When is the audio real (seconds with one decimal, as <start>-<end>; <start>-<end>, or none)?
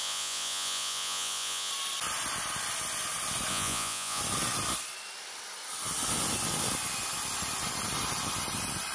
1.7-3.5; 4.2-8.9